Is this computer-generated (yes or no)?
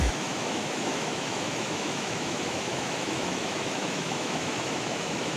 yes